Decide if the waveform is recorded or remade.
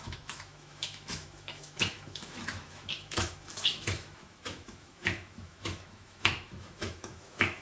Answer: remade